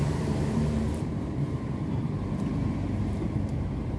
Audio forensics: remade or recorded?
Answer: remade